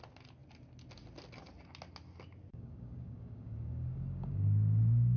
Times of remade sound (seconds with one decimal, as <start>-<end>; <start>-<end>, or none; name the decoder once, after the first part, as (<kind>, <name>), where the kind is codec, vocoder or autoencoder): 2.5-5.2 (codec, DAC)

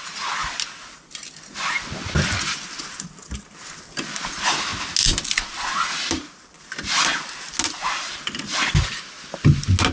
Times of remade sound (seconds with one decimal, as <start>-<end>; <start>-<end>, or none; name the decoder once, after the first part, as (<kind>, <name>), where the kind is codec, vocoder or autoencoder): none

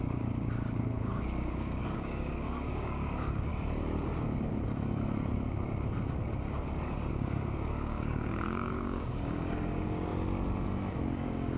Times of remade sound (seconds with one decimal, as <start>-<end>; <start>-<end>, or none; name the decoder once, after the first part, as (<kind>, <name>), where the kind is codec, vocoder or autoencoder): 0.0-3.5 (codec, DAC); 7.1-10.1; 10.9-11.6

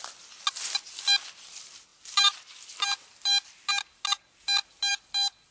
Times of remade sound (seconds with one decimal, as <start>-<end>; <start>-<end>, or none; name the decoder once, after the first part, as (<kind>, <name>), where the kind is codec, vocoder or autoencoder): none

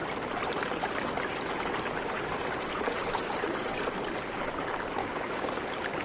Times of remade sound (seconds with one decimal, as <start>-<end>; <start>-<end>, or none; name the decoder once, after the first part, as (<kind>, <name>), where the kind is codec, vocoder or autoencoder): 5.0-5.5 (codec, DAC)

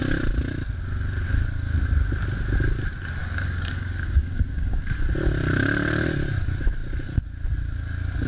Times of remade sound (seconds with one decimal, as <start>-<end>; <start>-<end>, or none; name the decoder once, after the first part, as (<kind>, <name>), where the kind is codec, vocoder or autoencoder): 3.2-4.8 (codec, DAC)

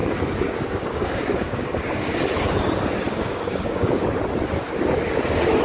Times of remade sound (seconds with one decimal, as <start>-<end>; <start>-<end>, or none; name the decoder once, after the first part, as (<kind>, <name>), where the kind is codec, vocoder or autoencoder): 0.0-2.1 (codec, DAC); 3.1-4.2

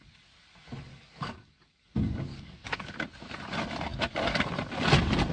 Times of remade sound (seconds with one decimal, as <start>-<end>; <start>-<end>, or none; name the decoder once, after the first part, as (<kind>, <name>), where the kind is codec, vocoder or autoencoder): 0.9-1.8 (codec, DAC); 2.3-2.9